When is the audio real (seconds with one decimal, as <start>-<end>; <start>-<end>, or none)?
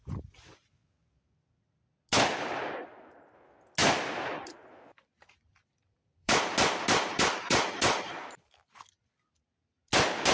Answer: 0.0-3.8; 8.4-10.3